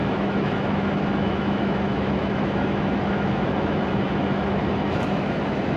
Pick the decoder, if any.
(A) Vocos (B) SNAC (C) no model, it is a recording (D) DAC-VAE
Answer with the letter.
D